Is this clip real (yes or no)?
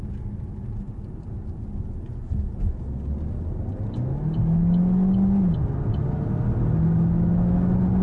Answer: yes